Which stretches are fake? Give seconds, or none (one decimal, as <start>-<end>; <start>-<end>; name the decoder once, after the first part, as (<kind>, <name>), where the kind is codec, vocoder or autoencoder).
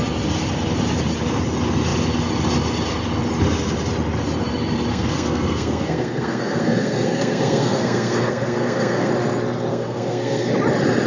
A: 4.9-9.1 (codec, SNAC); 9.7-10.5